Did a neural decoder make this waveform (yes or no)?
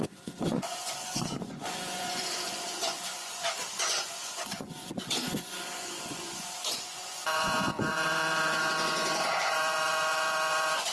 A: yes